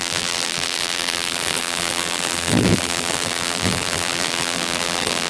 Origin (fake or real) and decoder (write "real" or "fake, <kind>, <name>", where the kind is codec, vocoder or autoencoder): fake, vocoder, BigVGAN v2